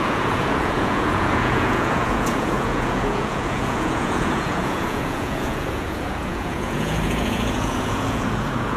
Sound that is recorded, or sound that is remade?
remade